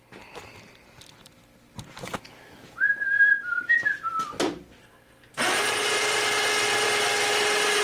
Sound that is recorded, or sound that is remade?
recorded